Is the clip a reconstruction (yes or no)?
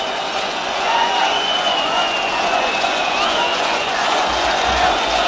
yes